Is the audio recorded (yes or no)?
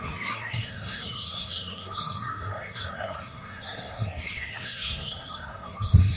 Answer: no